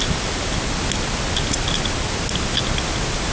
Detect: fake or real real